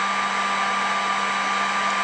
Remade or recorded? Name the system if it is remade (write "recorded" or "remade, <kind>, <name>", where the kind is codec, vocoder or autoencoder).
recorded